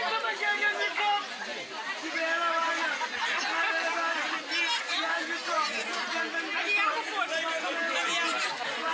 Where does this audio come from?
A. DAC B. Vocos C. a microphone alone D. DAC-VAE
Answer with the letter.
C